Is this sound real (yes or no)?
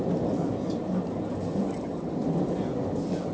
yes